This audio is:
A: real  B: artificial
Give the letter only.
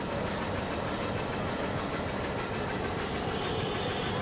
A